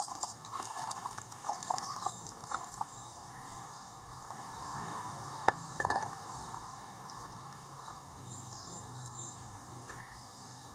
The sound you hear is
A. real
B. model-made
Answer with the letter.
B